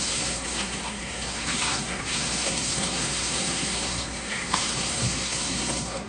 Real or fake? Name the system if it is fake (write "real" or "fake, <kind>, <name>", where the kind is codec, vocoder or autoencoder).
fake, codec, SNAC